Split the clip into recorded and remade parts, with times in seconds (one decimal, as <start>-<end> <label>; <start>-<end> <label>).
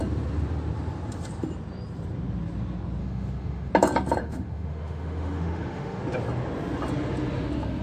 0.0-3.0 recorded; 3.0-3.7 remade; 3.7-4.2 recorded; 4.2-6.0 remade; 6.0-7.8 recorded